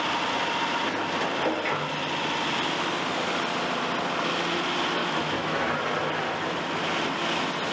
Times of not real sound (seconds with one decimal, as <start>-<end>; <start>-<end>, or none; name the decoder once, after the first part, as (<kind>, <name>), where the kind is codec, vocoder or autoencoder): 5.0-5.7 (autoencoder, DAC-VAE)